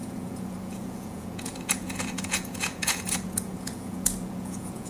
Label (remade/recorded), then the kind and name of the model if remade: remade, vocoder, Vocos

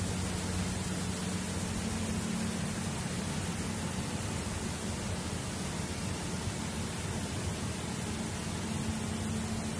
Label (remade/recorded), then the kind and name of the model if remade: recorded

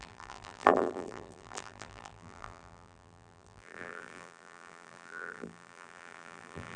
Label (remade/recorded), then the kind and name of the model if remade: remade, vocoder, BigVGAN v2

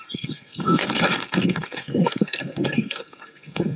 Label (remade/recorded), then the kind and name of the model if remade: remade, codec, SNAC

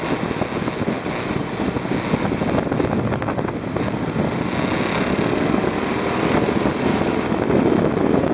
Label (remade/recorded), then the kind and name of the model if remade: recorded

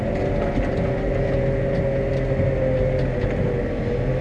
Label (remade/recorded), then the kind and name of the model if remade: recorded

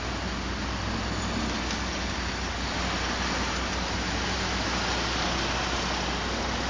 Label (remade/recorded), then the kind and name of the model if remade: recorded